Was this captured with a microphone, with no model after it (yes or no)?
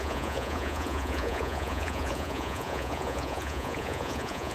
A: no